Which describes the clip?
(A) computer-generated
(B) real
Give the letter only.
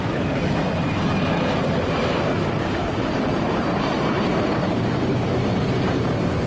A